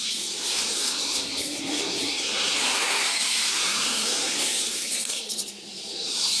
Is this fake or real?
fake